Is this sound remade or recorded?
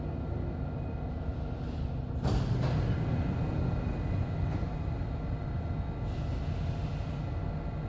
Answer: recorded